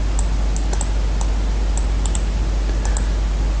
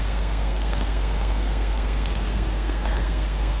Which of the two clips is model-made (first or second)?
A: second